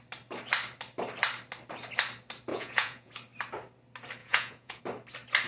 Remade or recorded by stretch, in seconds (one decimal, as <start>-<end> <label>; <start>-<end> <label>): 0.0-2.5 recorded; 2.5-3.1 remade; 3.1-4.2 recorded; 4.2-4.8 remade; 4.8-5.5 recorded